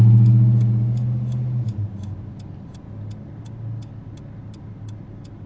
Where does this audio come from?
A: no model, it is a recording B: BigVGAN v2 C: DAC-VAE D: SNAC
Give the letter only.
A